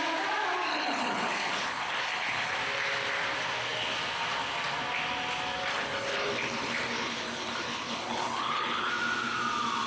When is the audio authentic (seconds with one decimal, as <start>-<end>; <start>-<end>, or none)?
0.0-0.7; 2.6-5.7; 8.9-9.9